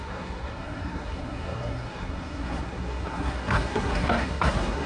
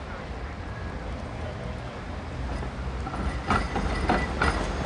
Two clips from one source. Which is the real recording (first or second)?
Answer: second